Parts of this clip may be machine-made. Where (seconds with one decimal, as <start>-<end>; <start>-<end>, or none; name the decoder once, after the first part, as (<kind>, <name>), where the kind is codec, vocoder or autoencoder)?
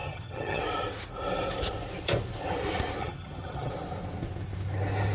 0.0-0.6 (vocoder, HiFi-GAN); 3.0-3.7